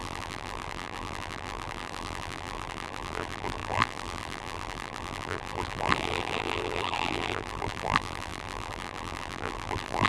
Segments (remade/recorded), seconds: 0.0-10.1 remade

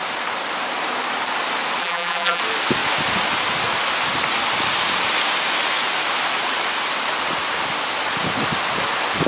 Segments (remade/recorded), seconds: 0.0-1.8 recorded; 1.8-2.4 remade; 2.4-9.3 recorded

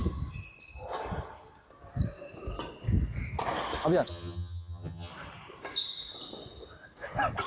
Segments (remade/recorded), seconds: 0.0-4.1 recorded; 4.1-5.1 remade; 5.1-7.5 recorded

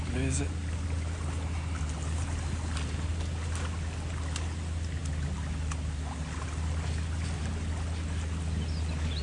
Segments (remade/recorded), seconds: 0.0-9.2 recorded

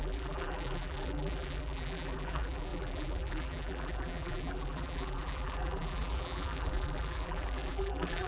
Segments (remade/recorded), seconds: 0.0-8.3 remade

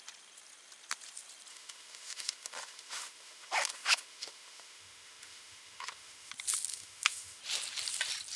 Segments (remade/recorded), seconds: 0.0-1.5 recorded; 1.5-6.3 remade; 6.3-6.7 recorded; 6.7-7.4 remade; 7.4-8.4 recorded

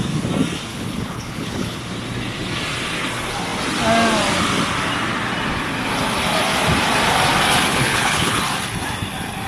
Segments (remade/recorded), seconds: 0.0-0.7 recorded; 0.7-1.8 remade; 1.8-7.7 recorded; 7.7-8.4 remade; 8.4-9.5 recorded

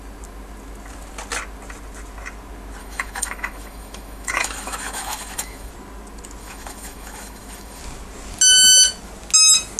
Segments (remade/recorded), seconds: 0.0-2.8 recorded; 2.8-5.7 remade; 5.7-6.4 recorded; 6.4-7.8 remade; 7.8-9.8 recorded